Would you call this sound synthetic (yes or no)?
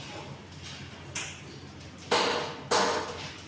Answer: no